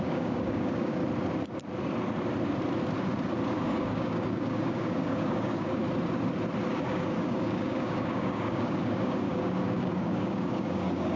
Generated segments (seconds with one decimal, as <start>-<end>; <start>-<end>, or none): 0.0-1.0; 3.5-5.8; 6.7-11.2